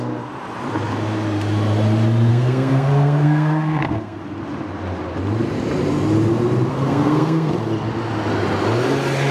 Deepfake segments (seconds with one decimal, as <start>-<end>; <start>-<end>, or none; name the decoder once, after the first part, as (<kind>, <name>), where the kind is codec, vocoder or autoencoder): 2.3-4.2 (codec, SNAC); 6.7-7.5